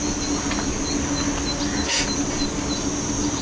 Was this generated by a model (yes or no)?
no